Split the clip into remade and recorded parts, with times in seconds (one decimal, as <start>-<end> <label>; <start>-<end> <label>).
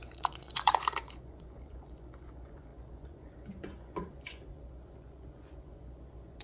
0.0-6.4 remade